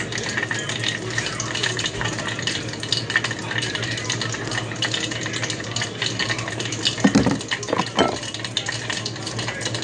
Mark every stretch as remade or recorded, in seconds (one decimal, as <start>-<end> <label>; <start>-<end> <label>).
0.0-1.6 recorded; 1.6-2.6 remade; 2.6-9.8 recorded